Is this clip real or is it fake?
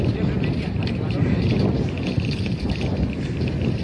real